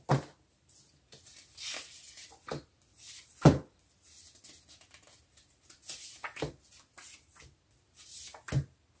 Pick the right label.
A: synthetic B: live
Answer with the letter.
B